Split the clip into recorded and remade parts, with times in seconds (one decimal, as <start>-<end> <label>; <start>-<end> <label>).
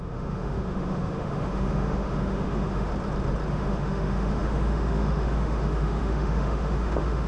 0.0-2.9 remade; 2.9-3.5 recorded; 3.5-7.3 remade